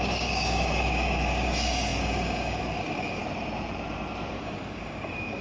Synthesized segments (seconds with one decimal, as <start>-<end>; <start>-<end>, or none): 0.0-3.2; 4.4-5.4